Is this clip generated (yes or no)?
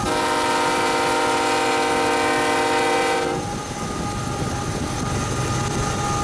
no